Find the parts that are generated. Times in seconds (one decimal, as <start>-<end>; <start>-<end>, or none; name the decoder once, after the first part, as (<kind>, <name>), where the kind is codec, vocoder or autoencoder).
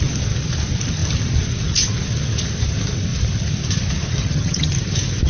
4.2-4.7 (vocoder, HiFi-GAN)